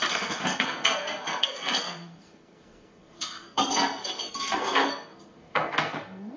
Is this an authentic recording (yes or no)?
no